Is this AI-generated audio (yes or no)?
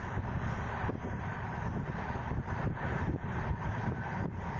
yes